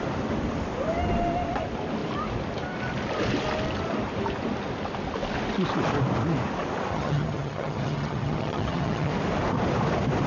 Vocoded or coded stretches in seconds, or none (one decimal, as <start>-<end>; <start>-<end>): 6.9-9.1